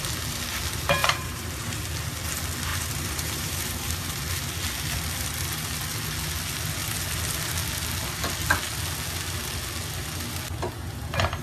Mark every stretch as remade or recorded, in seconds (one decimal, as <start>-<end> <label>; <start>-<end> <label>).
0.0-1.0 recorded; 1.0-1.8 remade; 1.8-2.7 recorded; 2.7-4.1 remade; 4.1-11.4 recorded